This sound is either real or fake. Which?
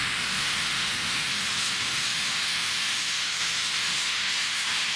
fake